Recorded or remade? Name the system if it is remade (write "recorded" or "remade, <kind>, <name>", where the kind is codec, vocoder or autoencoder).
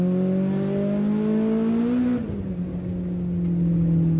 recorded